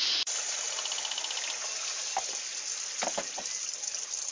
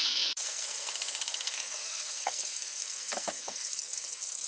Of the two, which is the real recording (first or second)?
first